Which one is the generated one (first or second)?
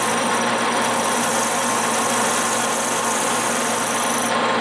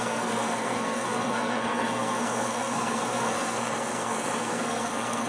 second